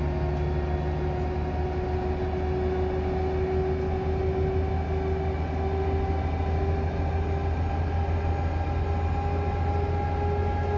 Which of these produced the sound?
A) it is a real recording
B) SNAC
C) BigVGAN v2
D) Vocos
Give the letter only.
A